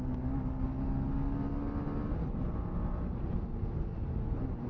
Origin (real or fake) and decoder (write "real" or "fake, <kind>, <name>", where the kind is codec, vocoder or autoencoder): real